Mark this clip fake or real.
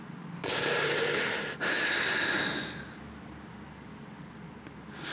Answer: real